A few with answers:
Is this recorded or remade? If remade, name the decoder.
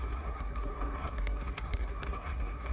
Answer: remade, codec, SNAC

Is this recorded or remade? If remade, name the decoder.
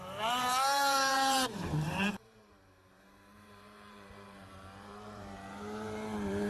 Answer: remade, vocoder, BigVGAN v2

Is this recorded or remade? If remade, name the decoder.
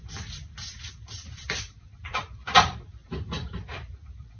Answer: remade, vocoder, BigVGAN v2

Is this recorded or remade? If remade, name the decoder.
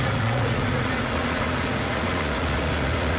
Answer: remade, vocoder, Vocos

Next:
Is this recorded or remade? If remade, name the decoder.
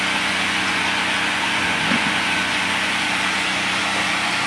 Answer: remade, vocoder, Vocos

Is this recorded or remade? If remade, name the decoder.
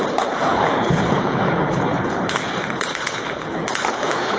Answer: remade, codec, HILCodec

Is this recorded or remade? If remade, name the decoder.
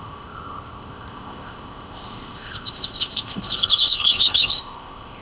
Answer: remade, codec, ZipCodec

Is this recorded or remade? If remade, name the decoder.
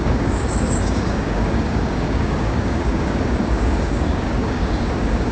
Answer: remade, codec, DAC